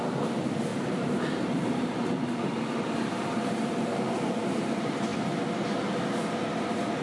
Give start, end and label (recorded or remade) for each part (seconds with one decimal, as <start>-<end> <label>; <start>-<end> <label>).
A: 0.0-0.7 recorded; 0.7-4.4 remade; 4.4-7.0 recorded